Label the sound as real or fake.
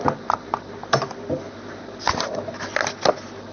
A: real